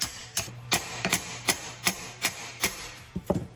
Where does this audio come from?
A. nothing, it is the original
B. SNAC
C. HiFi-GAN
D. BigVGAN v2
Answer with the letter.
D